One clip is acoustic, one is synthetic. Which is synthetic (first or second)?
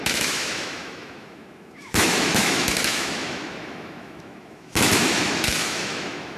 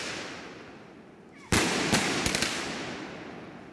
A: first